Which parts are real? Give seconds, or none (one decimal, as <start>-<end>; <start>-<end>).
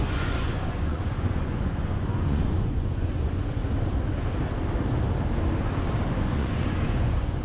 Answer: 3.6-6.2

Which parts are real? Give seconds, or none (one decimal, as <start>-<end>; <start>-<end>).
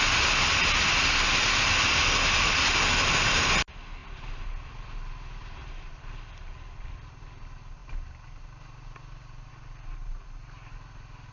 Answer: 0.0-11.3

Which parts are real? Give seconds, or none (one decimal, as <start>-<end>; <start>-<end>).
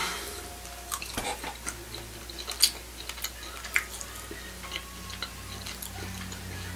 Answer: 0.0-6.8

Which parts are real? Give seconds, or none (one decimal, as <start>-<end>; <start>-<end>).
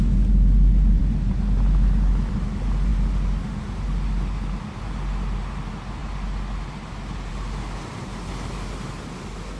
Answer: 0.0-9.6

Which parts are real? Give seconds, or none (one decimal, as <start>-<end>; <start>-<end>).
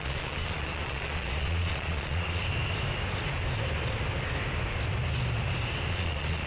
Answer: 2.4-5.9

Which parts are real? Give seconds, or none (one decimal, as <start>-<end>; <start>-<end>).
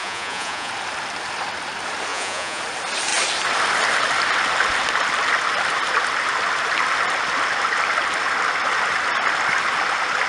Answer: 0.7-2.1; 2.6-10.3